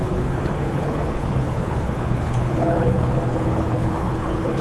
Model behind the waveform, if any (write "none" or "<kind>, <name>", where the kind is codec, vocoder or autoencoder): codec, HILCodec